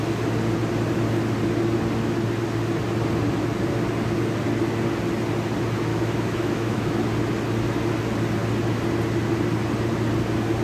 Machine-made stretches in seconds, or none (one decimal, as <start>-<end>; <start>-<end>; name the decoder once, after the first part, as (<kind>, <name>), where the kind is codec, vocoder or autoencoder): 5.9-7.1 (autoencoder, DAC-VAE)